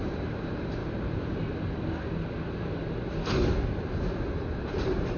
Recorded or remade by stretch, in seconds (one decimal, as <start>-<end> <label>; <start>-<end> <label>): 0.0-0.8 remade; 0.8-3.9 recorded; 3.9-5.2 remade